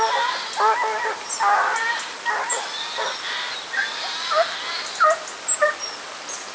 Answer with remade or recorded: recorded